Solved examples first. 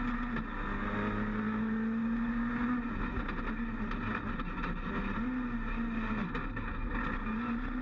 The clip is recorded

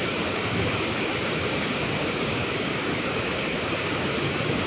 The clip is remade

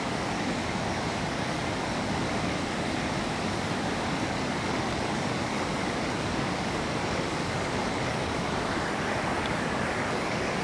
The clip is remade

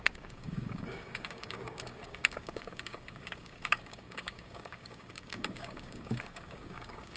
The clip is remade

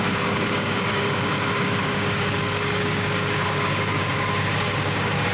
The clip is remade